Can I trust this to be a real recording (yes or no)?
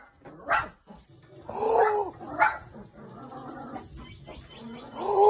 yes